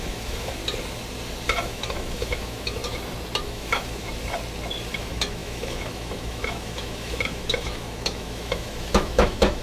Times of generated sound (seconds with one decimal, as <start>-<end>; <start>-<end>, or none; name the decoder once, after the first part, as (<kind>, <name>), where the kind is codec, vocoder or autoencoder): 0.0-0.6 (autoencoder, DAC-VAE); 1.6-2.8; 3.4-4.1; 4.9-9.6